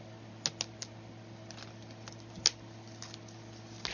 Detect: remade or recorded recorded